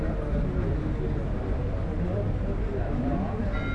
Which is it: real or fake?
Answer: real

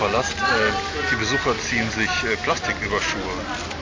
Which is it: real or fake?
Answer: real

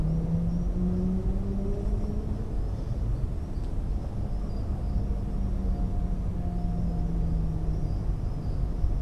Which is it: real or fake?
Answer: real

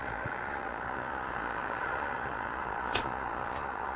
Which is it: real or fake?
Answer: fake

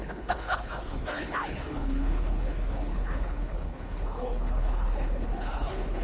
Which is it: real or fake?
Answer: fake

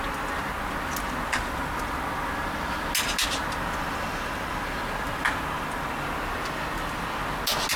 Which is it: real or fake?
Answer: real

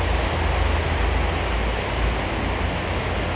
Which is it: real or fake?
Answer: real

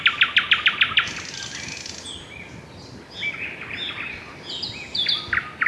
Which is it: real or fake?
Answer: real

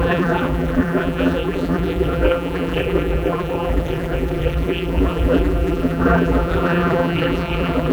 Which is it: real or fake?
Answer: fake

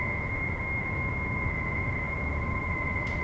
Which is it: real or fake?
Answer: fake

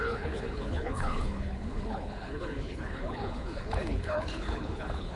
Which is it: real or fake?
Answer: fake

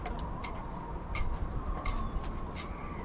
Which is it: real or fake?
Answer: real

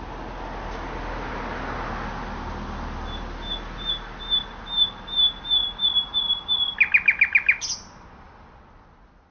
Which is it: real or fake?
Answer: real